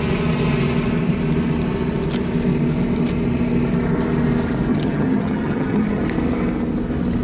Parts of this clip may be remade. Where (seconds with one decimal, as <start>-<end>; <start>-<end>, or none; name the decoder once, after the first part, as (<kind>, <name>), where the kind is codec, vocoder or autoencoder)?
4.7-6.0 (vocoder, HiFi-GAN)